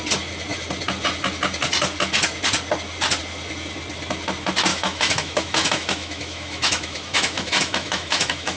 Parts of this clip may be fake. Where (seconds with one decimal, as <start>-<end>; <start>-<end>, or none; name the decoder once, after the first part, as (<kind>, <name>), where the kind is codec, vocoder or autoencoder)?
4.7-8.6 (autoencoder, DAC-VAE)